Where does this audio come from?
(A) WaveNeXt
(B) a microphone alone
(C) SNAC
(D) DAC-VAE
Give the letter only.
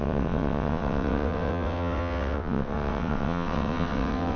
A